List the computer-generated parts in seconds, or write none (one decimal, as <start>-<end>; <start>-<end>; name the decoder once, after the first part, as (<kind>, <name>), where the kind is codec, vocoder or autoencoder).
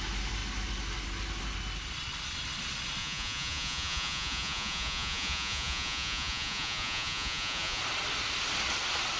3.0-7.8 (vocoder, Vocos)